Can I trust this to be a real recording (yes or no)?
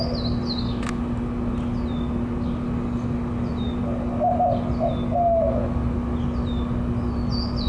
yes